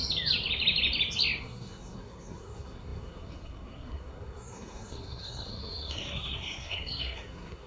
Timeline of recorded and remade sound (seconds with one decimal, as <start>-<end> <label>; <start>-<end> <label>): 0.0-1.4 recorded; 1.4-7.7 remade